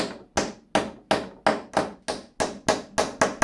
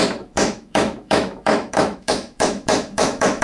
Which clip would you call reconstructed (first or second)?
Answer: second